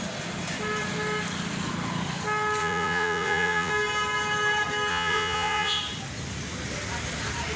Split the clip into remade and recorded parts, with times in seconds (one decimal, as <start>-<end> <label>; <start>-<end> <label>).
0.0-2.6 recorded; 2.6-3.7 remade; 3.7-4.9 recorded; 4.9-5.8 remade; 5.8-7.6 recorded